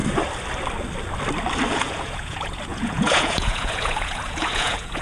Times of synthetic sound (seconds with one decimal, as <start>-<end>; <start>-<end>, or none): 1.7-5.0